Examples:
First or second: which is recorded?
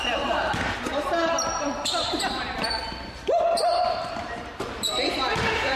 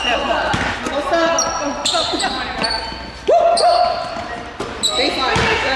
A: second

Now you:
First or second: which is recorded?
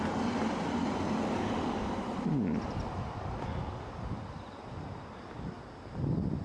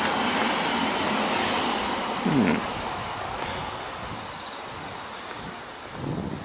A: second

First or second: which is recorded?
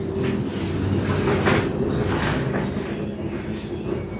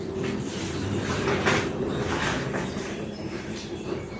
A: first